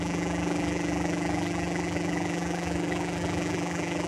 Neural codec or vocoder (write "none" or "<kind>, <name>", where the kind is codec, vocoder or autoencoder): vocoder, BigVGAN v2